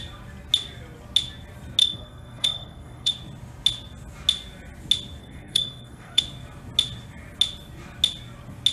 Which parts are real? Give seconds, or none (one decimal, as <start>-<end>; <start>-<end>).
0.0-1.8; 3.1-5.2; 6.2-8.7